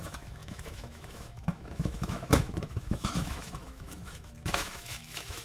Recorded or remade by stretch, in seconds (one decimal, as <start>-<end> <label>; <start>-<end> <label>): 0.0-5.4 remade